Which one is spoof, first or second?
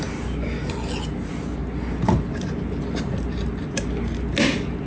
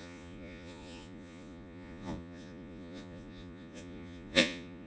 second